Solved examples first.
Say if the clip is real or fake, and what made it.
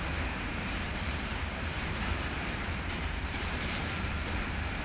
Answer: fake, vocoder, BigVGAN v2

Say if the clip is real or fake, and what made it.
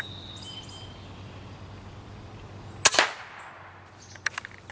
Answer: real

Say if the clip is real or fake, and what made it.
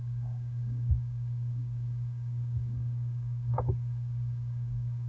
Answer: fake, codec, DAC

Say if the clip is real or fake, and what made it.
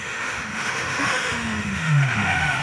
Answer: fake, autoencoder, DAC-VAE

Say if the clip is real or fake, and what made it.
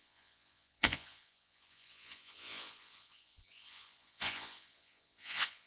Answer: fake, vocoder, Vocos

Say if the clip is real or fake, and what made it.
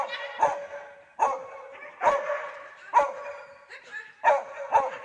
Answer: real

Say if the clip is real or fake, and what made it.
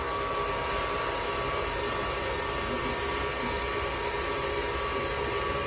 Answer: real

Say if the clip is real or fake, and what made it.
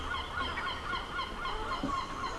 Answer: real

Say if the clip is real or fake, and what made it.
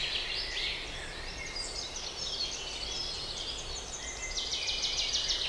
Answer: real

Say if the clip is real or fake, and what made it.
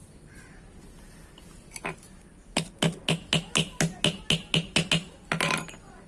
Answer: real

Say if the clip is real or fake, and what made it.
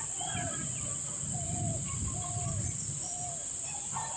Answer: fake, vocoder, BigVGAN v2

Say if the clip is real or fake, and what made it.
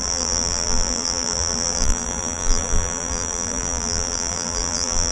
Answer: fake, vocoder, BigVGAN v2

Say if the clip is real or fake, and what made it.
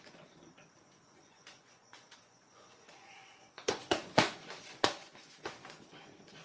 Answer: fake, vocoder, Vocos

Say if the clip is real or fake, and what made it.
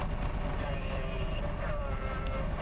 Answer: fake, vocoder, BigVGAN v2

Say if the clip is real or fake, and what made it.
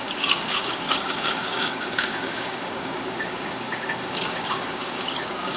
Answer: fake, codec, DAC